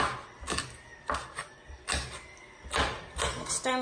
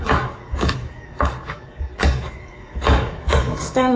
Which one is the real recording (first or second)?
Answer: first